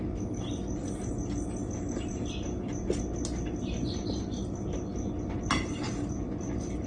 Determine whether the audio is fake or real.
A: real